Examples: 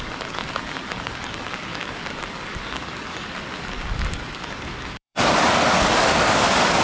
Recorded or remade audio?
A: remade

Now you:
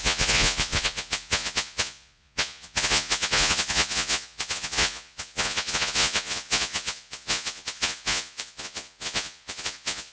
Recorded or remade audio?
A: remade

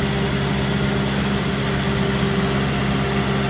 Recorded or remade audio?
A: recorded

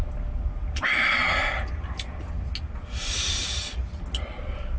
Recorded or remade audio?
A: recorded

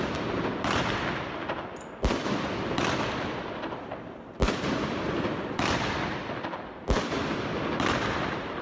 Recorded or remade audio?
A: remade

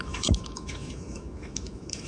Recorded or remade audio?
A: remade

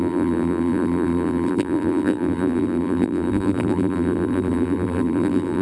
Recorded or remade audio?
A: remade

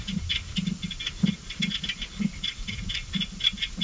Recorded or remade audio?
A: recorded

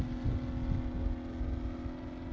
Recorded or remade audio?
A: recorded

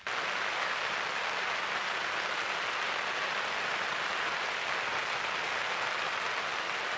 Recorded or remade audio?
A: recorded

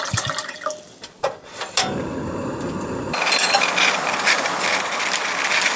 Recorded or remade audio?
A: remade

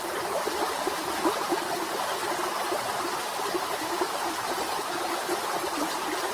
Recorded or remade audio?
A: recorded